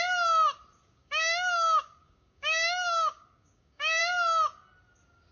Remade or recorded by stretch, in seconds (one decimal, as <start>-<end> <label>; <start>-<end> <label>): 0.0-0.8 recorded; 0.8-4.0 remade; 4.0-5.3 recorded

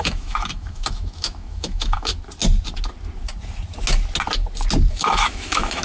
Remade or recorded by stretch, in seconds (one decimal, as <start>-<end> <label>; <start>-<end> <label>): 0.0-2.1 remade; 2.1-4.9 recorded; 4.9-5.8 remade

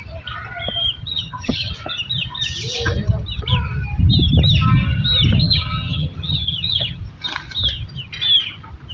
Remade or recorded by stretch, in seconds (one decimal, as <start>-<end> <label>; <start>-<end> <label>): 0.0-1.0 recorded; 1.0-1.7 remade; 1.7-5.4 recorded; 5.4-7.0 remade; 7.0-8.9 recorded

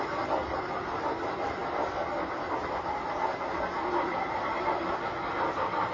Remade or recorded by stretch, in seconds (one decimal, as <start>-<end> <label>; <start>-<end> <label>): 0.0-5.9 recorded

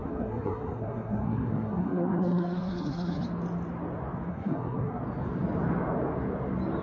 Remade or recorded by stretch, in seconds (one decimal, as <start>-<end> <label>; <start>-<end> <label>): 0.0-3.2 remade; 3.2-4.3 recorded; 4.3-5.0 remade; 5.0-6.8 recorded

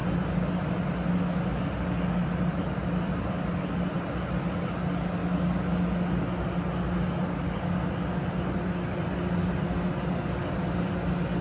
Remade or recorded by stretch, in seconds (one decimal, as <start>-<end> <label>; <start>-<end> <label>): 0.0-11.4 recorded